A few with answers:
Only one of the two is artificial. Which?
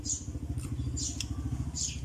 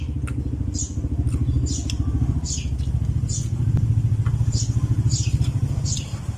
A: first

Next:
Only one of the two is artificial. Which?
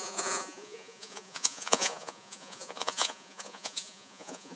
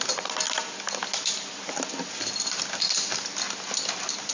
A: first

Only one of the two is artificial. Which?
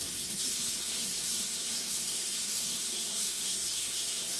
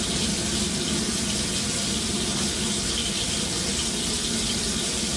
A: first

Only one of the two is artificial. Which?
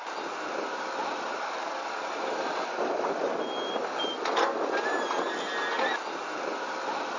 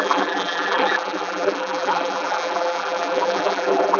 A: second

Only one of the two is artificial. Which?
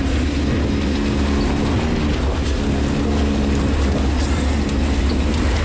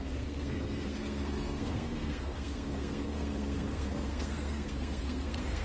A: second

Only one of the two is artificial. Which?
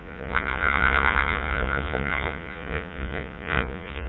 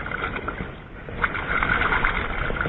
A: first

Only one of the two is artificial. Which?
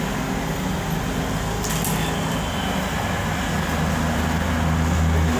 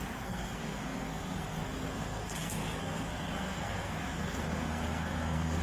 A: second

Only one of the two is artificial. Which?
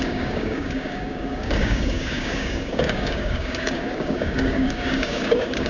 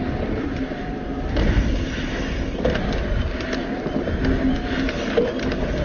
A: first